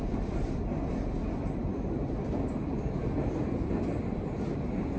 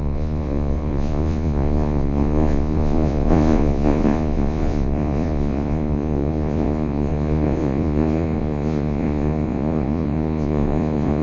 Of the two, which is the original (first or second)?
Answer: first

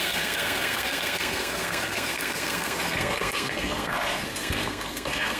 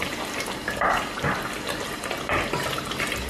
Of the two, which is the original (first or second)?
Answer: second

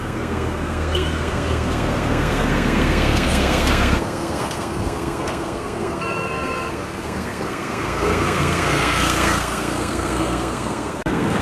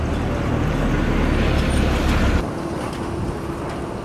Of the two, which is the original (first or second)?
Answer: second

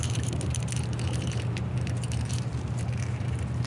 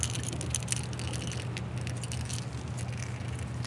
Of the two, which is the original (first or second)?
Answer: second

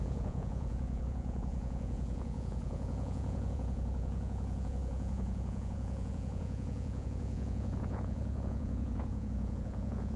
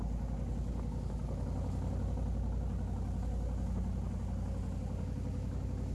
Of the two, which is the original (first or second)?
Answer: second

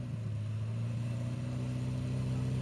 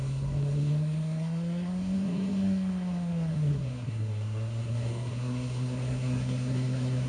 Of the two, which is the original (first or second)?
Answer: first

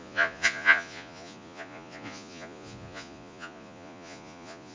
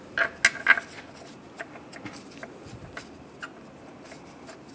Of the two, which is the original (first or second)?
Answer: second